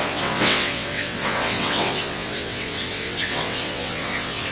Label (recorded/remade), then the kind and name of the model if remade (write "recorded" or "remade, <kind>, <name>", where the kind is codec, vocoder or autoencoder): remade, vocoder, WaveNeXt